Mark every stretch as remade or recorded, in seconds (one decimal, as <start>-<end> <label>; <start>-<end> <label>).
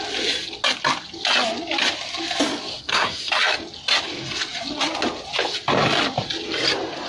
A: 0.0-2.7 recorded; 2.7-3.3 remade; 3.3-7.1 recorded